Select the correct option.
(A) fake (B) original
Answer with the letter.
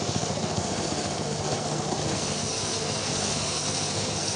A